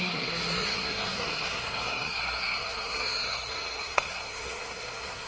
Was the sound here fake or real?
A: fake